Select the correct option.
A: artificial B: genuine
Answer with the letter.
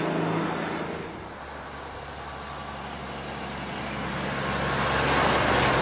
B